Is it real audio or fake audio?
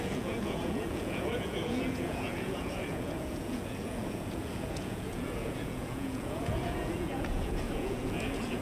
fake